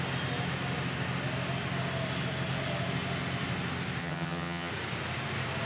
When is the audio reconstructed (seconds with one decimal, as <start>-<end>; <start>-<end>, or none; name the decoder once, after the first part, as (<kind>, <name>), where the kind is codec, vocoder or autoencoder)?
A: 4.0-4.7 (vocoder, HiFi-GAN)